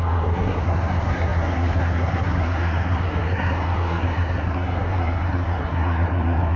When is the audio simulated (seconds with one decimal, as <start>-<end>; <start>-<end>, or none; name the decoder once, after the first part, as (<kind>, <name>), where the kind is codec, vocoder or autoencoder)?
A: 0.0-6.6 (codec, SNAC)